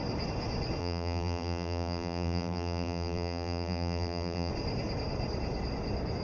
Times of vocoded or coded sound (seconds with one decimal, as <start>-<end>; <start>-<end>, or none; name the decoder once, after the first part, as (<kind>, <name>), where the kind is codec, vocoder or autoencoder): 0.8-4.5 (vocoder, BigVGAN v2)